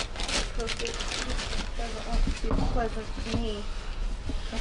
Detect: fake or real real